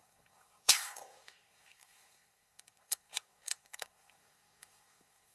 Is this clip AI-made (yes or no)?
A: yes